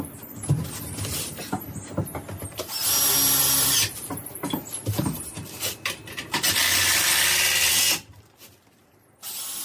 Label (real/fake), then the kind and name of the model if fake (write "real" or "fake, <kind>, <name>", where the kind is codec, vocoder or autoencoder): real